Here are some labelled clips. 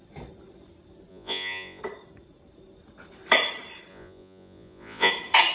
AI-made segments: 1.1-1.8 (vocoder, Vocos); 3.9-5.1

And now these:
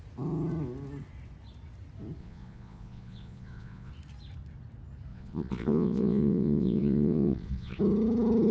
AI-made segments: 2.2-3.9 (vocoder, Vocos); 5.1-7.8

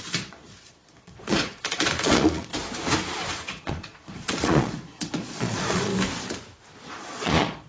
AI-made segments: 0.0-2.5 (vocoder, Vocos); 3.3-5.9; 6.9-7.7

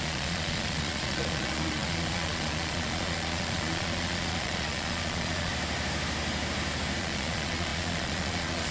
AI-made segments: 0.0-5.5 (vocoder, Vocos); 7.0-8.7

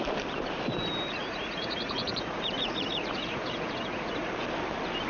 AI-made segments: 1.2-4.3 (vocoder, Vocos)

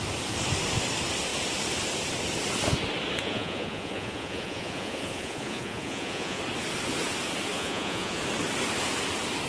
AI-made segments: 3.2-6.4 (vocoder, Vocos); 7.5-8.2

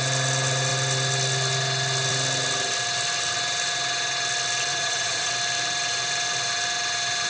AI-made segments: 4.7-5.3 (vocoder, Vocos)

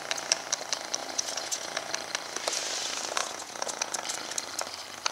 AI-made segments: 1.0-1.9 (vocoder, Vocos); 3.2-3.9